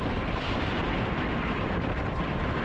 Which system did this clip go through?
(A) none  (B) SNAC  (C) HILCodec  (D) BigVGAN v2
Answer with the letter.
A